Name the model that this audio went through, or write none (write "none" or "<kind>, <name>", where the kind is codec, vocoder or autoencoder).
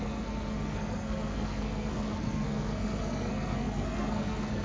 codec, SNAC